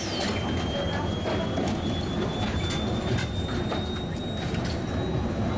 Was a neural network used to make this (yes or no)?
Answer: no